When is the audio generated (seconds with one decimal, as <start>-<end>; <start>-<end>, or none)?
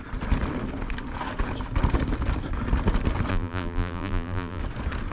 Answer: 3.3-4.6